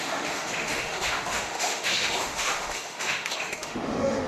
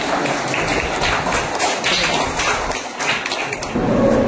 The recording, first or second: second